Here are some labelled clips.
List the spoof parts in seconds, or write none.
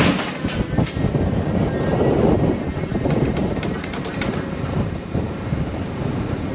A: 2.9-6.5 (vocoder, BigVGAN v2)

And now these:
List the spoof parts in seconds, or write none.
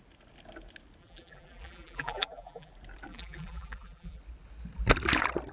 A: 1.0-2.7 (vocoder, BigVGAN v2); 3.1-4.2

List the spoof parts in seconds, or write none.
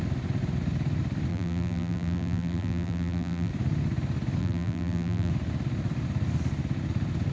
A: 1.3-3.5 (vocoder, BigVGAN v2); 4.4-5.3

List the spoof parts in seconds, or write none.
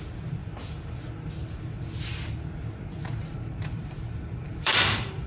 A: 0.0-0.4 (vocoder, BigVGAN v2); 3.2-5.3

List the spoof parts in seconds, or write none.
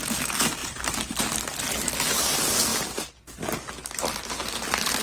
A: 0.6-1.2 (vocoder, BigVGAN v2)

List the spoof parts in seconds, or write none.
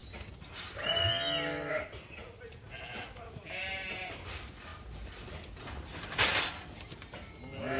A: none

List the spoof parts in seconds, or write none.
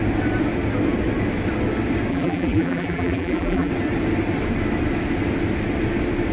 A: 2.1-3.7 (vocoder, BigVGAN v2)